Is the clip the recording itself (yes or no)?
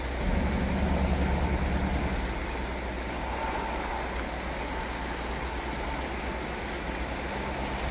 yes